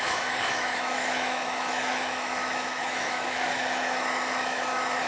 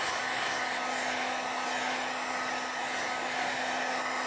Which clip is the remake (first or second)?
first